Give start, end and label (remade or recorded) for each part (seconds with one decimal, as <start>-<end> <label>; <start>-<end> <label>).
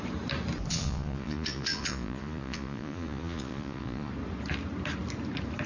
0.0-0.7 recorded; 0.7-4.1 remade; 4.1-5.7 recorded